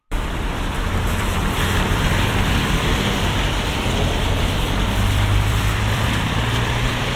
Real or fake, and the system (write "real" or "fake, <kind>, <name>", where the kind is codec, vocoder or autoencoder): fake, vocoder, BigVGAN v2